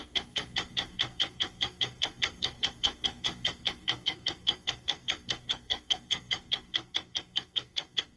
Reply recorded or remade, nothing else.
remade